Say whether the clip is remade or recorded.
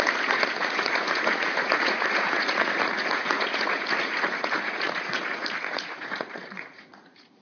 remade